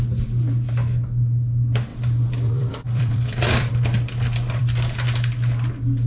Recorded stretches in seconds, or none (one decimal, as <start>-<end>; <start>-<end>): 0.0-1.9; 3.7-6.1